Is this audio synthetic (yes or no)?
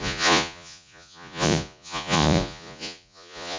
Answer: yes